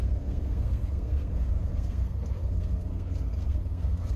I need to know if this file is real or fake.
fake